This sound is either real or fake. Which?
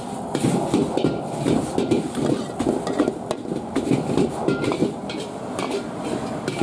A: real